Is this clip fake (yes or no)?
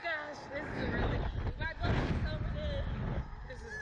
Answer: no